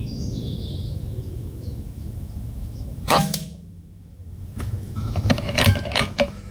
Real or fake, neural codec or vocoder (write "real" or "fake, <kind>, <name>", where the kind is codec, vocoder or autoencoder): fake, autoencoder, DAC-VAE